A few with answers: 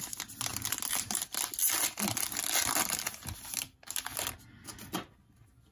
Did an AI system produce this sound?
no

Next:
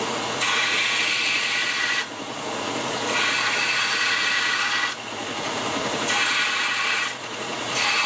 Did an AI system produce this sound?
yes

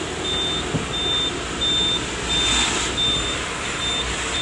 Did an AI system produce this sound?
no